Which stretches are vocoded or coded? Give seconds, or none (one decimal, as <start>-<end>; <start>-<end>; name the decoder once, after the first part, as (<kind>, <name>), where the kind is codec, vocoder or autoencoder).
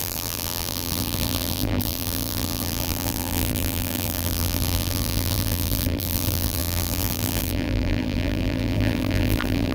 0.0-9.7 (vocoder, BigVGAN v2)